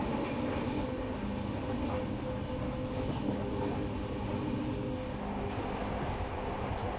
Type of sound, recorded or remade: recorded